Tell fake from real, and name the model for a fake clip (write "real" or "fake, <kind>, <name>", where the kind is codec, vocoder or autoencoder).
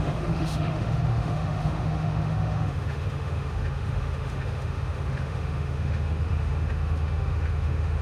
fake, autoencoder, DAC-VAE